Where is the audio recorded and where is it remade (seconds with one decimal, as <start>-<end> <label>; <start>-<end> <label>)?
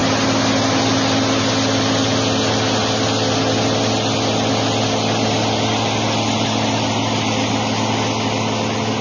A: 0.0-9.0 recorded